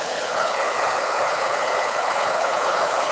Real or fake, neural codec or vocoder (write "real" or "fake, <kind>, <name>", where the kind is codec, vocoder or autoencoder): fake, codec, HILCodec